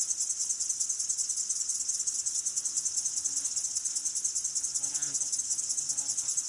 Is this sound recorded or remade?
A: recorded